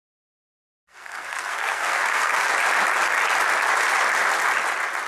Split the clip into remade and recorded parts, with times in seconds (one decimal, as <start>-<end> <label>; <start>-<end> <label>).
0.0-2.5 remade; 2.5-5.1 recorded